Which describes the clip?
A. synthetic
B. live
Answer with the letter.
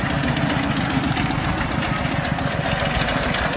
B